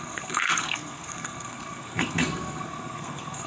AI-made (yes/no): yes